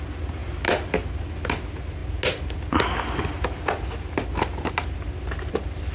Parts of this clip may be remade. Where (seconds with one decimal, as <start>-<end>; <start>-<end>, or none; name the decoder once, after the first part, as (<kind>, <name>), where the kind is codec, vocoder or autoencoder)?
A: none